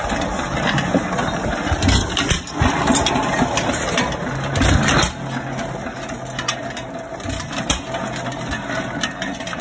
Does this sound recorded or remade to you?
recorded